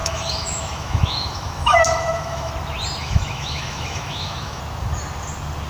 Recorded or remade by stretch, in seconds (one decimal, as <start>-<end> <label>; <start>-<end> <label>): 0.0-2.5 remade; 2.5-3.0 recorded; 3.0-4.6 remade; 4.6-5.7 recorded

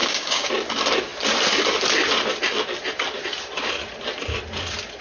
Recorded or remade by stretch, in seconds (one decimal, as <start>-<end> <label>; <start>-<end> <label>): 0.0-0.5 remade; 0.5-5.0 recorded

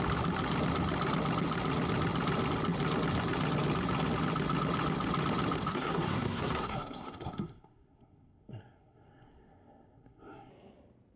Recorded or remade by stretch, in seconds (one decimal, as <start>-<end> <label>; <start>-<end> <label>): 0.0-5.7 recorded; 5.7-10.5 remade; 10.5-11.2 recorded

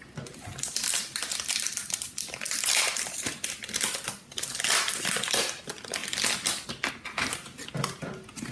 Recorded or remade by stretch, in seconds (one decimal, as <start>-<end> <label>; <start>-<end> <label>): 0.0-0.8 recorded; 0.8-5.6 remade; 5.6-8.5 recorded

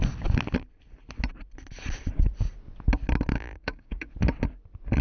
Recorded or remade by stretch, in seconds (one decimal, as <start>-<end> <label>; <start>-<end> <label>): 0.0-3.3 recorded; 3.3-4.1 remade; 4.1-5.0 recorded